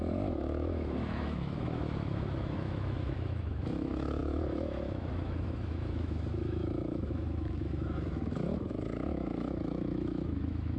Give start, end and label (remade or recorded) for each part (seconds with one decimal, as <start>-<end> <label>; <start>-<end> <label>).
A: 0.0-10.8 remade